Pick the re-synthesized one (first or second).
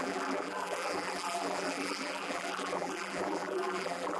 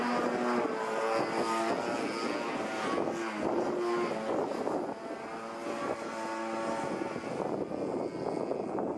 first